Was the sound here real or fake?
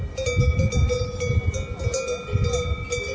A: real